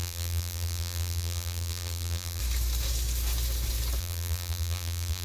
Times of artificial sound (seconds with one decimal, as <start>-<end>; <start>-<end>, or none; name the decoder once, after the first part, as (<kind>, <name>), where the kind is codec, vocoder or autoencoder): 0.0-2.4 (vocoder, BigVGAN v2); 4.0-5.2